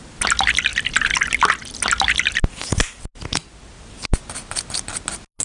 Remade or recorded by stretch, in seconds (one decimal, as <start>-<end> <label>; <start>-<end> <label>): 0.0-5.4 recorded